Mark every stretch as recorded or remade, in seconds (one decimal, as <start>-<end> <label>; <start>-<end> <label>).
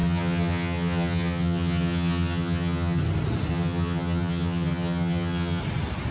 0.0-3.0 remade; 3.0-3.5 recorded; 3.5-5.6 remade; 5.6-6.1 recorded